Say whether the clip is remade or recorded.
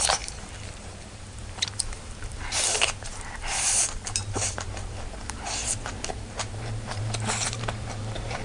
remade